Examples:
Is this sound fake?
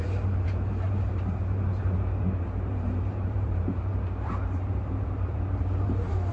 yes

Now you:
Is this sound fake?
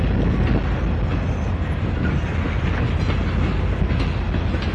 no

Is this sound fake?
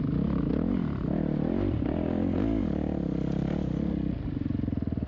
no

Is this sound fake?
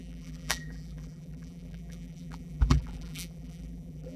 yes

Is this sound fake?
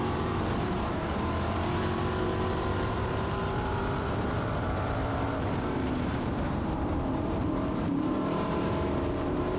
yes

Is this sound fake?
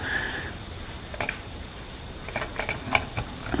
no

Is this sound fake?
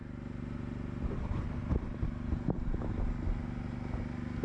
no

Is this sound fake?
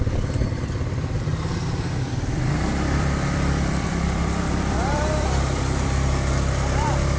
yes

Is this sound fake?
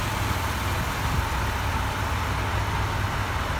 no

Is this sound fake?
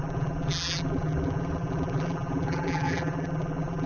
yes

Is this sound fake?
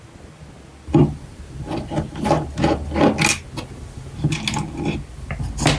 no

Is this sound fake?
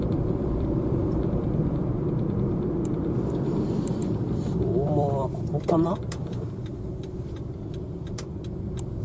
yes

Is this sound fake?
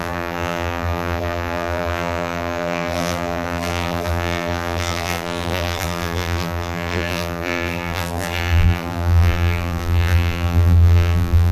yes